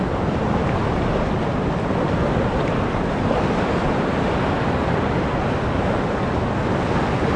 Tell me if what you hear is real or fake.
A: real